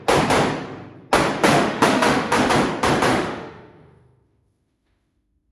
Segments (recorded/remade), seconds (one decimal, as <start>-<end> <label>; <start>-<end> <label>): 0.0-1.5 recorded; 1.5-2.5 remade; 2.5-3.1 recorded; 3.1-5.5 remade